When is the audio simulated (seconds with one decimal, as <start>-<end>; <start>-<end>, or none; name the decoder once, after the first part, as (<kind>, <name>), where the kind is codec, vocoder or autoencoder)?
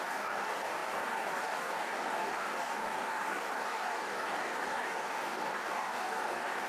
0.0-6.7 (codec, DAC)